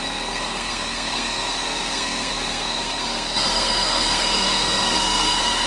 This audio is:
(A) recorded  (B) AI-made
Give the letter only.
B